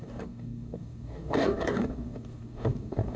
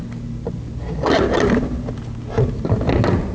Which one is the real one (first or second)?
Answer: second